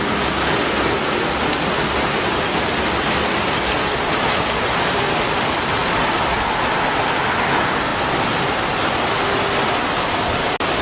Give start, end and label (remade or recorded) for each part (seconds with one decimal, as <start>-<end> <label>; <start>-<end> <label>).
0.0-10.8 recorded

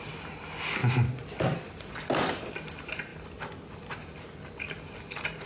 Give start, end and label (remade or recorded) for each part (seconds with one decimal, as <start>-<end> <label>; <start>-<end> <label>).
0.0-5.5 recorded

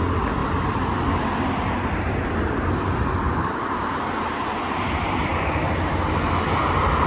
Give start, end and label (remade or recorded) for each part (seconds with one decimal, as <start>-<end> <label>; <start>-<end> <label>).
0.0-5.3 remade; 5.3-6.6 recorded; 6.6-7.1 remade

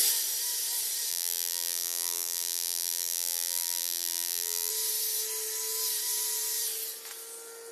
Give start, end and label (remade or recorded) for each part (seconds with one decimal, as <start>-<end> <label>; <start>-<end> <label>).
0.0-1.1 recorded; 1.1-4.7 remade; 4.7-7.7 recorded

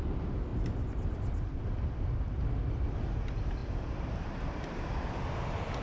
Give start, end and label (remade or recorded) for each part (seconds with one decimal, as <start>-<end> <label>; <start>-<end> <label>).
0.0-3.6 recorded; 3.6-5.2 remade; 5.2-5.8 recorded

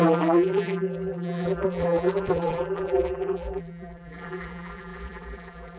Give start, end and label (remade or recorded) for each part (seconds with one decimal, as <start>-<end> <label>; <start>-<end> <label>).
0.0-5.8 remade